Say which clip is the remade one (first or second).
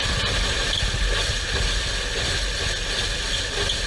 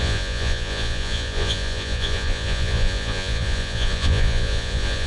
second